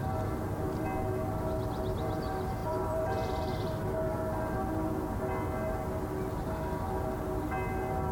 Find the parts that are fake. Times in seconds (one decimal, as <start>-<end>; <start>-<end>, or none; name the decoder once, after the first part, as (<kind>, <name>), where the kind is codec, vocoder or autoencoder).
2.6-4.3 (vocoder, BigVGAN v2)

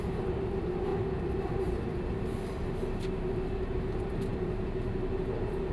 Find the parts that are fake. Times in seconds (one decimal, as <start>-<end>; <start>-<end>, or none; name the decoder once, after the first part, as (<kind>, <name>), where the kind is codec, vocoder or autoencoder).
0.9-2.1 (vocoder, BigVGAN v2)

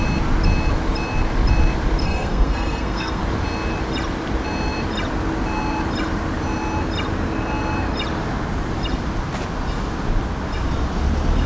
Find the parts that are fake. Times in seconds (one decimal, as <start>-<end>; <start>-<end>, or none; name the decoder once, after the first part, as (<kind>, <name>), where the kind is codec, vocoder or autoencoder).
2.0-3.2 (codec, SNAC)

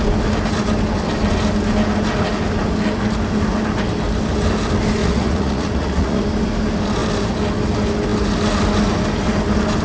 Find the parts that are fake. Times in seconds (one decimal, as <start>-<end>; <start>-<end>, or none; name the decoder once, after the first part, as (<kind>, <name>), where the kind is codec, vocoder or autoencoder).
5.0-6.2 (vocoder, Vocos)

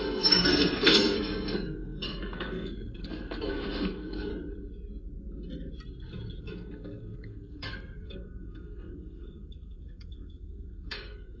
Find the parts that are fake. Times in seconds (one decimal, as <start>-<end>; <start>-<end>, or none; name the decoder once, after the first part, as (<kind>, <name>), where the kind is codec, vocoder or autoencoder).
0.0-4.3 (codec, SNAC); 6.4-11.4